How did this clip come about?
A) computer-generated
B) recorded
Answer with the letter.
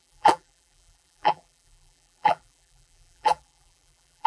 A